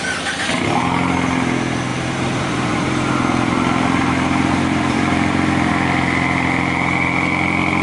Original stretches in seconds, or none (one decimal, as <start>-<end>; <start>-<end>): 0.0-1.9; 5.7-7.8